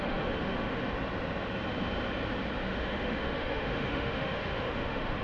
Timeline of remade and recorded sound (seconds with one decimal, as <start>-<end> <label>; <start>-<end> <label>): 0.0-0.8 remade; 0.8-2.7 recorded; 2.7-5.2 remade